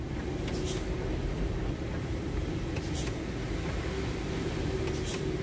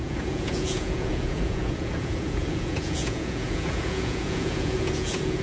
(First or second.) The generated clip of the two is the second